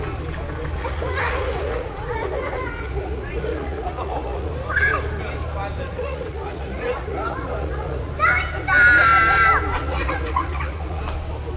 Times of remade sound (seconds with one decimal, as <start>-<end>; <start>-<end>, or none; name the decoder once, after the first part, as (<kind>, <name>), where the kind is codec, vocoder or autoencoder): 0.8-4.5 (vocoder, Vocos); 5.9-8.1; 9.8-11.0